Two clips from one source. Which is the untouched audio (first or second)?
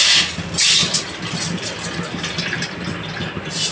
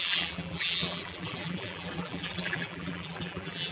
first